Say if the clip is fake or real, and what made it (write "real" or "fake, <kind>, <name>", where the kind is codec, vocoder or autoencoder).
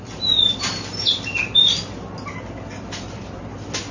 real